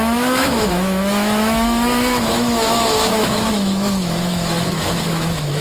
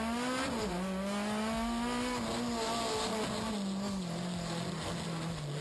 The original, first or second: second